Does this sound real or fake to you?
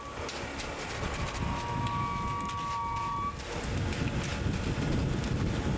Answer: real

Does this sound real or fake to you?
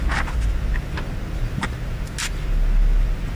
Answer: real